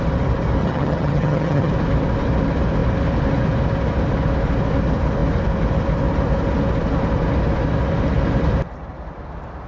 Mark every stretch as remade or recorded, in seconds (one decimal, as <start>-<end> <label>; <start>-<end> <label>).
0.0-0.6 recorded; 0.6-1.7 remade; 1.7-9.7 recorded